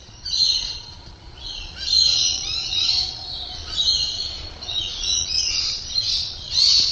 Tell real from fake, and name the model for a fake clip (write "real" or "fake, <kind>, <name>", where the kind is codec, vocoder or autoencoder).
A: fake, vocoder, Vocos